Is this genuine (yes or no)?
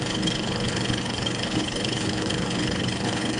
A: no